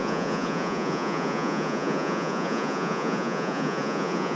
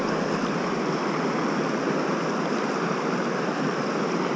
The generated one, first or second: first